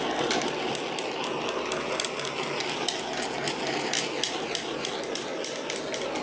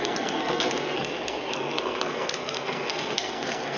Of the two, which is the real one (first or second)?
first